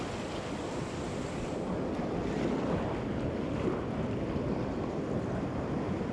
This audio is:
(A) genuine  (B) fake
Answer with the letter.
A